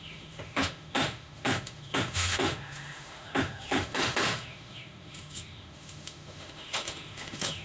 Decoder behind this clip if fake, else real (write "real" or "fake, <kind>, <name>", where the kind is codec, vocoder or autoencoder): fake, autoencoder, DAC-VAE